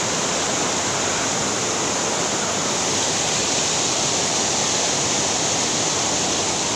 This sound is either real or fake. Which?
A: fake